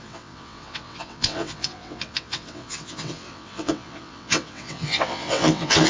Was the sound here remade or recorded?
remade